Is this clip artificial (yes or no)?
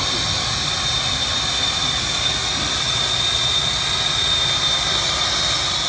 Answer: no